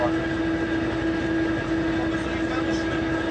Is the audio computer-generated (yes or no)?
no